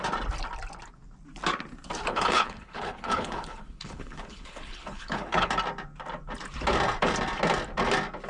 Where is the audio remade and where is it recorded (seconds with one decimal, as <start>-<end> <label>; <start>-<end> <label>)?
0.0-2.1 recorded; 2.1-5.5 remade; 5.5-8.3 recorded